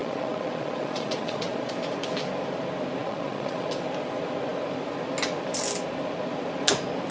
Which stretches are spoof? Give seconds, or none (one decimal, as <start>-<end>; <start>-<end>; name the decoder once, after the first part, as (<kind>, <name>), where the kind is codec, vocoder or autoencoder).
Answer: 0.0-1.7 (vocoder, Vocos); 3.0-3.7